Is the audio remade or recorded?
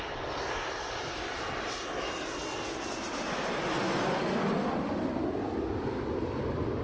recorded